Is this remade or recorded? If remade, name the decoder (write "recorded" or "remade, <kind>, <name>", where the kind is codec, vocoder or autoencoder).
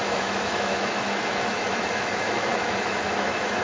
remade, autoencoder, DAC-VAE